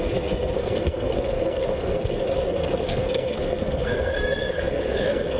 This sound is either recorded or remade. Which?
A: remade